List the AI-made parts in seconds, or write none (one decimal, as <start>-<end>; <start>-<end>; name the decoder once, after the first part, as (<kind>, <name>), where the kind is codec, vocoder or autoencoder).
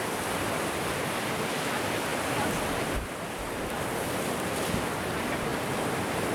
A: none